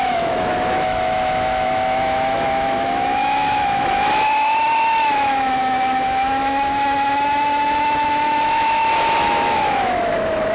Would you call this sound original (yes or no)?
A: no